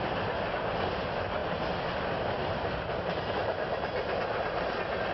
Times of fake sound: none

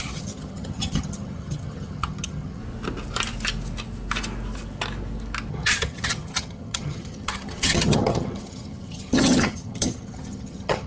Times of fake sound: 0.0-2.6 (vocoder, HiFi-GAN); 5.5-10.9

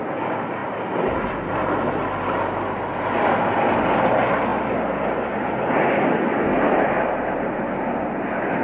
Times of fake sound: none

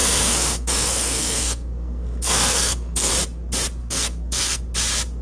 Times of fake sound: 0.0-3.1 (codec, SNAC); 3.8-4.6

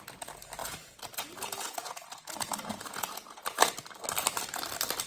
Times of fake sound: 0.6-3.7 (vocoder, Vocos)

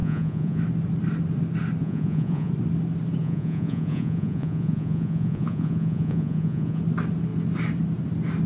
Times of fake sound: 0.0-0.6 (vocoder, Vocos); 1.8-2.5; 3.2-6.8

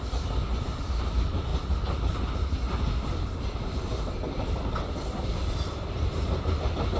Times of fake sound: none